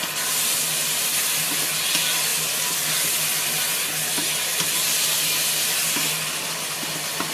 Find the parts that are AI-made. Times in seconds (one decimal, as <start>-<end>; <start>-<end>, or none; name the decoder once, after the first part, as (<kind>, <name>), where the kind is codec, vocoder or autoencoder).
none